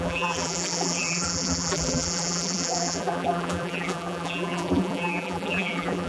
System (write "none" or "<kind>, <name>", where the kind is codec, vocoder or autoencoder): vocoder, BigVGAN v2